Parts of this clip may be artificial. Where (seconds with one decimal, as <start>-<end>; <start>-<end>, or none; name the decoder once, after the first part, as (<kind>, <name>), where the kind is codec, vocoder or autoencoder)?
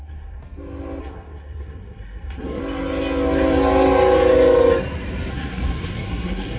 0.0-0.4 (codec, SNAC); 1.0-2.6; 5.3-6.6